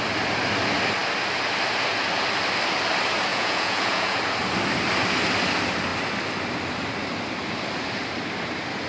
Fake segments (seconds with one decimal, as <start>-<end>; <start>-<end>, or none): 3.3-4.2